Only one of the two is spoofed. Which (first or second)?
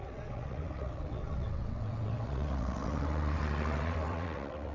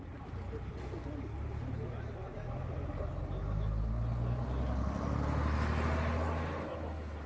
first